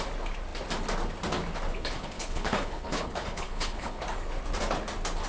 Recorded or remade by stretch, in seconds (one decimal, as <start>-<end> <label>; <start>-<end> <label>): 0.0-1.7 recorded; 1.7-4.0 remade; 4.0-5.3 recorded